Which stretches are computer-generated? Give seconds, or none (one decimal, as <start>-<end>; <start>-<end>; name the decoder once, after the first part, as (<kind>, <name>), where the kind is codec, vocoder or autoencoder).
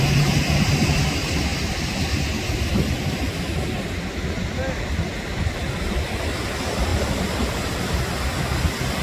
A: 6.9-8.2 (vocoder, BigVGAN v2)